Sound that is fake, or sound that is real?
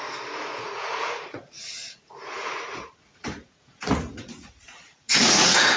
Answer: fake